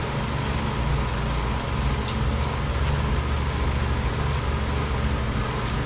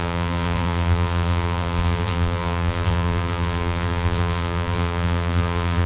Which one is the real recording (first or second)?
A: first